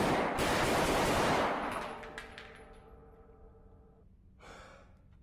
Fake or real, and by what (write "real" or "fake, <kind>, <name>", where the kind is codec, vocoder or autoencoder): real